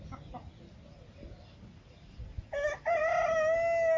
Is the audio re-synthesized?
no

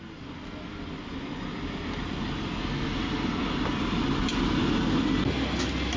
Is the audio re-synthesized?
no